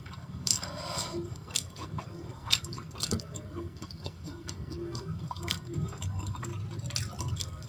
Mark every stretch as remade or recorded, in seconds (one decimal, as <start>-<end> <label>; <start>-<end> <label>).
0.0-6.5 remade; 6.5-7.2 recorded; 7.2-7.7 remade